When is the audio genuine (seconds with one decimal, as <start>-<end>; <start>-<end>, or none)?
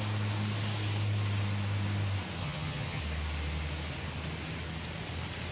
0.0-2.4; 3.0-5.5